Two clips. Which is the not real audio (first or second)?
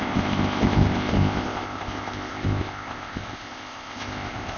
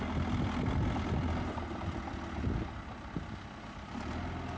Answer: first